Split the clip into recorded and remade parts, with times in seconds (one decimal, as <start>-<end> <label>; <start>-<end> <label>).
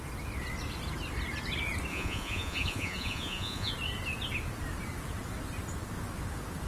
0.0-1.9 recorded; 1.9-3.7 remade; 3.7-6.7 recorded